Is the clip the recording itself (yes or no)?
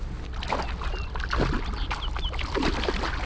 yes